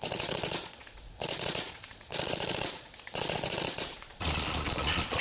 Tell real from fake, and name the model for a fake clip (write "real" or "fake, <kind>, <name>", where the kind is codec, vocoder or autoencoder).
fake, vocoder, Vocos